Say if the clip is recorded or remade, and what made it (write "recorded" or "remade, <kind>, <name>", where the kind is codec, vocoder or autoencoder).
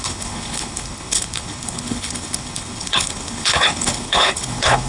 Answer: remade, codec, HILCodec